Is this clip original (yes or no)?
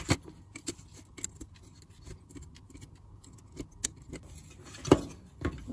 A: yes